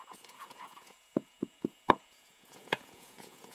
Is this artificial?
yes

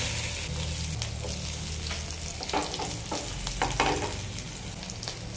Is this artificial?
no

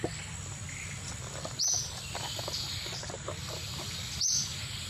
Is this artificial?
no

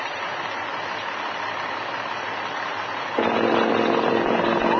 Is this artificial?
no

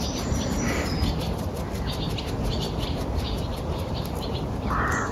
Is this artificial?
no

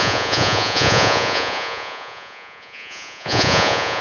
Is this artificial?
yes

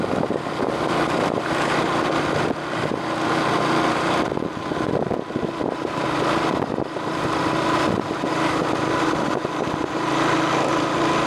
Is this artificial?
no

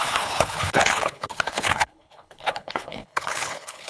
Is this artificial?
yes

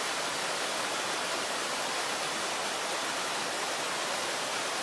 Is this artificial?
no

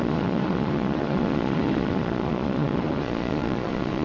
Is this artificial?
yes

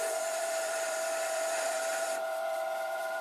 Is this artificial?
yes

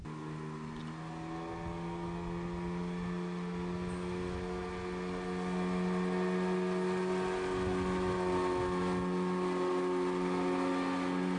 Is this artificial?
no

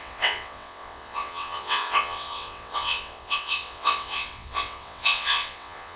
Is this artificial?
yes